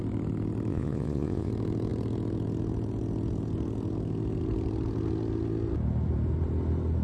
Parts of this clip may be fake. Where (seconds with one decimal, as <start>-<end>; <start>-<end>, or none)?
0.7-1.5